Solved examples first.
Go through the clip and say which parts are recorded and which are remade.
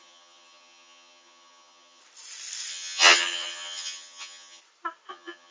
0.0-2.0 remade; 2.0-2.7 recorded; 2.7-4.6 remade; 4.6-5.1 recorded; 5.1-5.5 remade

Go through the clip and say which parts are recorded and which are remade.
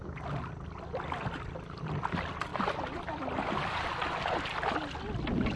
0.0-5.6 recorded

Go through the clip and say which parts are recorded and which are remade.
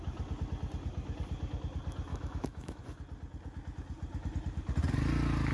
0.0-2.1 recorded; 2.1-2.8 remade; 2.8-5.5 recorded